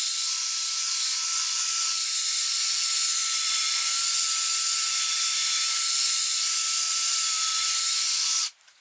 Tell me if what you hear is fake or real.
fake